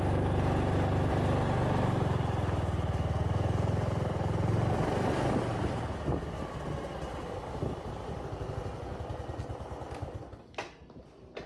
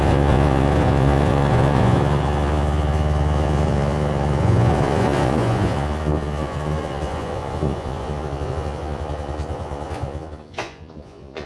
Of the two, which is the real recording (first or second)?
first